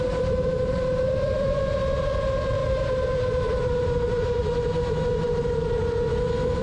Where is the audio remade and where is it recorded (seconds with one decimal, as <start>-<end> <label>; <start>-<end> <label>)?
0.0-5.8 remade; 5.8-6.6 recorded

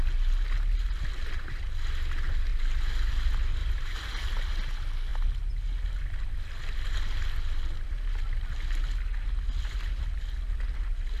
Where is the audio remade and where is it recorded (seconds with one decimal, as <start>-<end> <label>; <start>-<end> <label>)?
0.0-2.5 recorded; 2.5-3.1 remade; 3.1-3.6 recorded; 3.6-4.3 remade; 4.3-11.2 recorded

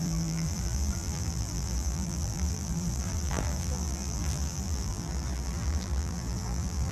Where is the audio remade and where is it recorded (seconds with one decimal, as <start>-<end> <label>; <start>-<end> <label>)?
0.0-6.9 remade

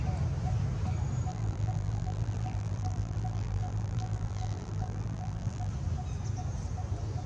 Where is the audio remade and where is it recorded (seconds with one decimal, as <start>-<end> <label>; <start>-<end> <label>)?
0.0-1.3 recorded; 1.3-5.7 remade; 5.7-7.3 recorded